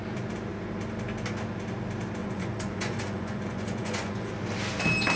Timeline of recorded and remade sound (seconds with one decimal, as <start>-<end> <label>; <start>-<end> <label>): 0.0-2.2 recorded; 2.2-4.3 remade; 4.3-5.2 recorded